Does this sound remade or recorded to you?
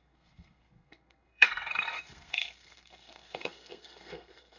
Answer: remade